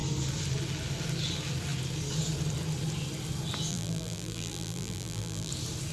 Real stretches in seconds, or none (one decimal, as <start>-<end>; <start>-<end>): 0.0-3.7; 5.5-5.9